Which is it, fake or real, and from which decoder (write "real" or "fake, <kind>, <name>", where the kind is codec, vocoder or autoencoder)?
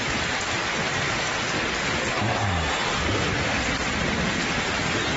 real